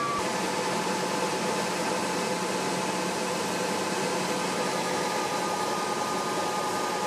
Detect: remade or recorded recorded